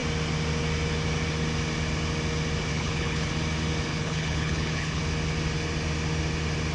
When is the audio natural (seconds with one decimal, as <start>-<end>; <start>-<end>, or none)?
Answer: 0.0-2.7; 3.3-3.9; 5.0-6.7